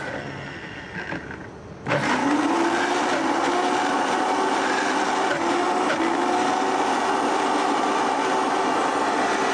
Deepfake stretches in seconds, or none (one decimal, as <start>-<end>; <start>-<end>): none